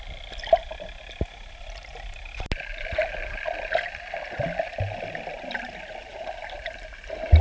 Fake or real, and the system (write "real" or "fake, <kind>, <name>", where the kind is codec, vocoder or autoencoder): real